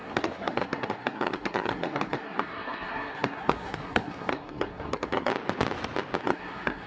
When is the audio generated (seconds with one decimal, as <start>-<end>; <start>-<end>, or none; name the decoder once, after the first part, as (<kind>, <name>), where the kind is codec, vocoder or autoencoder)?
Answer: 0.0-5.3 (codec, SNAC); 6.2-6.9